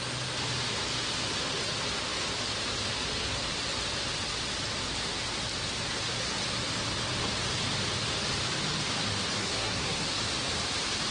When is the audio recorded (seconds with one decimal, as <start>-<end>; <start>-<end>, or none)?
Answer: 0.0-9.4; 10.2-11.1